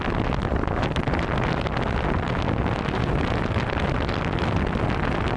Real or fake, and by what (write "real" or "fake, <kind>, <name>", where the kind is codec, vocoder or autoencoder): real